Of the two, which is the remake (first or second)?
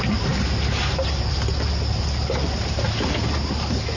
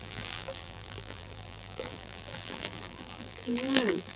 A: second